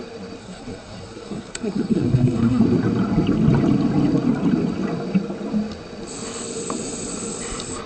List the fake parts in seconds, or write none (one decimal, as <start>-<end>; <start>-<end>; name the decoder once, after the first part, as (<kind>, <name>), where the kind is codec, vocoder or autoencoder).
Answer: 0.4-2.6 (codec, SNAC)